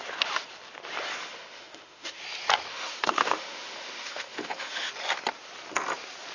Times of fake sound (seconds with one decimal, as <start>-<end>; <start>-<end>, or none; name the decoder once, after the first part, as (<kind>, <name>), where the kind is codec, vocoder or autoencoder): 1.2-2.2 (autoencoder, DAC-VAE); 2.7-4.9